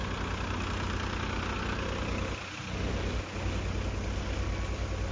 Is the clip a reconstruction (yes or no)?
no